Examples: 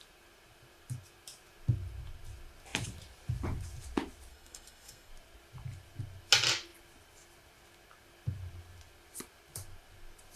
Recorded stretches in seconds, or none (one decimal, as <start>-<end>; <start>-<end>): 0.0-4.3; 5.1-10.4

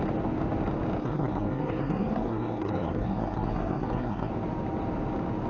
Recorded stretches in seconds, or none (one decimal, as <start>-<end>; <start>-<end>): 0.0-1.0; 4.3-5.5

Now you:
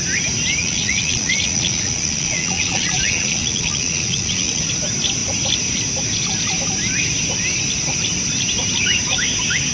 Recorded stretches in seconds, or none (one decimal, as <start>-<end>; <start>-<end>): 0.0-0.6; 4.6-9.7

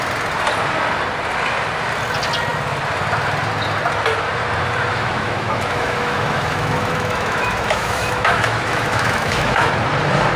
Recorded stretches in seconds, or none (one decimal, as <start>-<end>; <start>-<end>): 0.0-4.9; 9.7-10.4

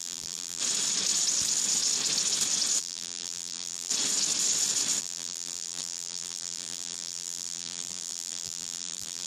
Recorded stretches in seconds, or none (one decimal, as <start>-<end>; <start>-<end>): 0.6-2.8; 3.9-5.0

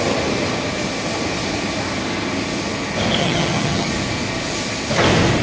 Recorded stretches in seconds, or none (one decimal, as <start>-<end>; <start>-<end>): 0.0-3.2; 3.9-5.4

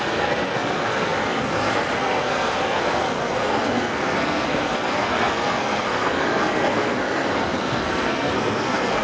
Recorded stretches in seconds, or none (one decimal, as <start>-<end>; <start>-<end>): none